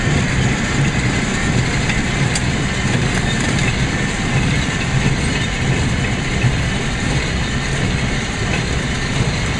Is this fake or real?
fake